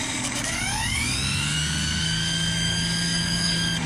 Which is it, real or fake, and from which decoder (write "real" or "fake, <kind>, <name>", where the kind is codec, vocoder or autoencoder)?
fake, codec, DAC